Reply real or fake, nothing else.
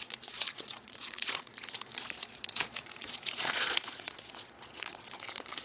fake